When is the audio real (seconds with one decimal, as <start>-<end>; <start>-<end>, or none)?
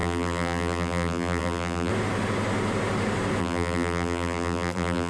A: 1.9-3.4